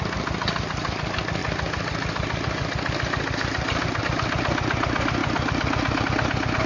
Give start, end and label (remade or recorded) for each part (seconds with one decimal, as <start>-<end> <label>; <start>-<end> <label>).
0.0-6.7 recorded